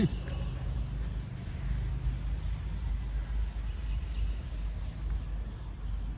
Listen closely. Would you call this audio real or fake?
real